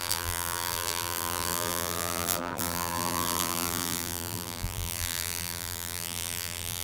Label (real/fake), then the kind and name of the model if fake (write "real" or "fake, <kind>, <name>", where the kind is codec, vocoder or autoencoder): fake, vocoder, BigVGAN v2